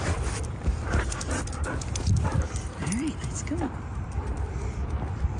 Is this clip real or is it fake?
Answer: fake